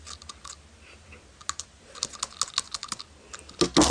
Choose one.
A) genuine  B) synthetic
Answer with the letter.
A